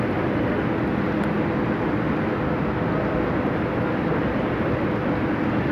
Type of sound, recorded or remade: recorded